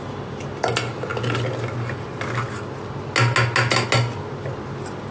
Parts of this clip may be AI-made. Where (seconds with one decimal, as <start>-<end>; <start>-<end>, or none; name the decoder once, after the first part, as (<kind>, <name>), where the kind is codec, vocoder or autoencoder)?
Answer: none